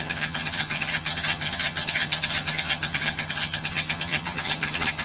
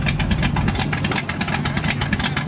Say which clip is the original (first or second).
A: second